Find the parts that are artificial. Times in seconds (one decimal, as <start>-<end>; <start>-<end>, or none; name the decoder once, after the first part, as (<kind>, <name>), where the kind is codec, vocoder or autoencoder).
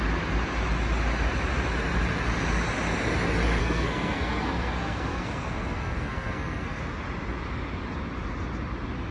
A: 3.6-6.8 (codec, SNAC)